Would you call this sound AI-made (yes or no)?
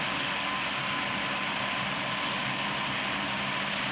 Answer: no